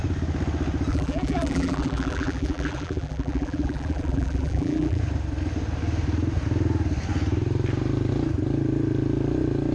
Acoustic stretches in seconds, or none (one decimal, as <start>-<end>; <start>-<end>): 0.0-0.9; 5.0-9.7